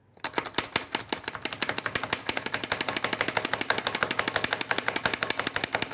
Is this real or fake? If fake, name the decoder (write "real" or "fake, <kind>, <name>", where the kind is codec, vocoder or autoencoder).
real